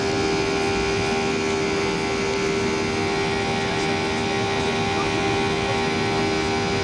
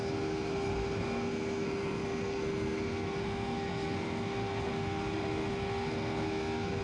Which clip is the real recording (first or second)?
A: first